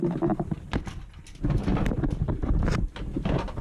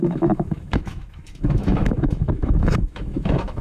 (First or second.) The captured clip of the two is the first